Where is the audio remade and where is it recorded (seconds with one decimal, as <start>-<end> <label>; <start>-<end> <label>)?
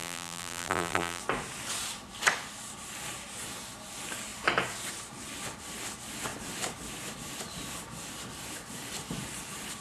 0.0-1.2 remade; 1.2-9.8 recorded